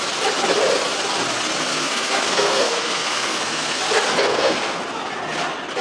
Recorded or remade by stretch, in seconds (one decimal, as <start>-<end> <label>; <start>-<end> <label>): 0.0-1.7 recorded; 1.7-3.8 remade; 3.8-4.3 recorded; 4.3-4.8 remade; 4.8-5.8 recorded